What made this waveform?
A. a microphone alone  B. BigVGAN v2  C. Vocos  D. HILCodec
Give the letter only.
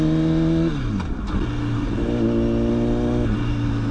A